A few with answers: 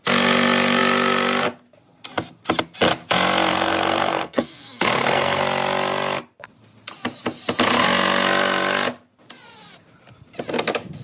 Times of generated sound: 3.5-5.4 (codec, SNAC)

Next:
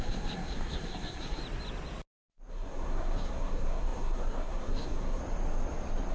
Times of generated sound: 0.0-1.4 (codec, SNAC); 2.5-5.2

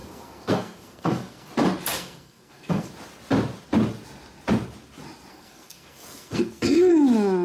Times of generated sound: 0.0-1.5 (codec, SNAC); 1.9-2.9; 5.3-6.9